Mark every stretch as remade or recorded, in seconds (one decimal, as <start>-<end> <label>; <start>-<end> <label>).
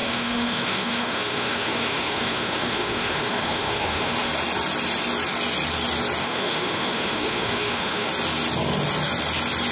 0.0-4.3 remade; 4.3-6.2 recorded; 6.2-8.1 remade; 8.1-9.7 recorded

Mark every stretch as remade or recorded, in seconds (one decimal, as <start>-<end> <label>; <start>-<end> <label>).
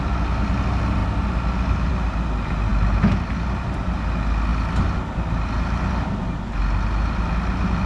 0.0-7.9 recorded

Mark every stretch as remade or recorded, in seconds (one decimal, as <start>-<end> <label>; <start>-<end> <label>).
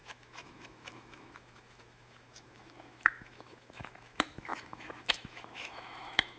0.0-6.4 remade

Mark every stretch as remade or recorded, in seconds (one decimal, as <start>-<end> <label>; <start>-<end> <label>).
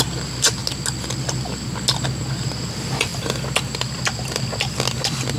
0.0-5.4 recorded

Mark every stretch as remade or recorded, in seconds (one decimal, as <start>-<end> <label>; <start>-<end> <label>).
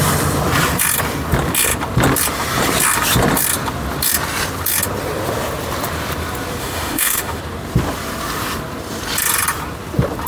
0.0-6.6 recorded; 6.6-7.4 remade; 7.4-10.3 recorded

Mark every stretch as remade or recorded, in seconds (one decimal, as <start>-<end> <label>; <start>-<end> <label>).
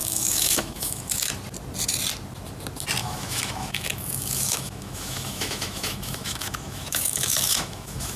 0.0-1.3 remade; 1.3-3.0 recorded; 3.0-8.2 remade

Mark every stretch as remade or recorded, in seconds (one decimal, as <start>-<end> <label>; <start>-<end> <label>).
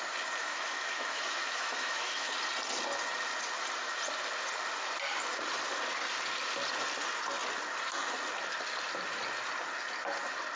0.0-0.4 recorded; 0.4-2.3 remade; 2.3-10.6 recorded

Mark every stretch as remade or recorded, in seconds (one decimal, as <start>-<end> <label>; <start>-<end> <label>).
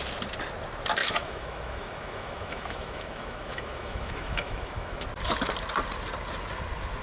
0.0-1.0 recorded; 1.0-5.0 remade; 5.0-7.0 recorded